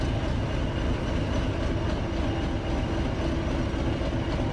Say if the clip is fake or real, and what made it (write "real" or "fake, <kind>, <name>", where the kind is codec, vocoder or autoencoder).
real